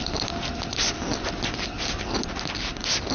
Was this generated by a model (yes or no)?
no